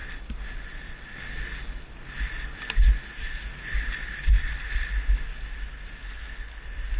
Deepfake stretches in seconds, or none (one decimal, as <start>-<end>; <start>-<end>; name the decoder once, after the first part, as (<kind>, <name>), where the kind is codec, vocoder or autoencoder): 6.0-6.6 (codec, HILCodec)